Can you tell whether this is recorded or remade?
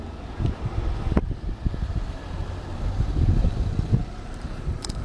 recorded